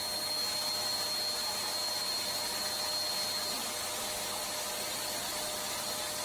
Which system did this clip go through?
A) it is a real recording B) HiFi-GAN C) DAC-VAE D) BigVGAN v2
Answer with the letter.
A